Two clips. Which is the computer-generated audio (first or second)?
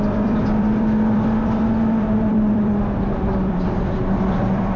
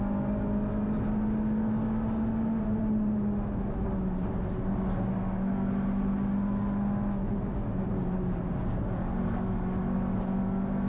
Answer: first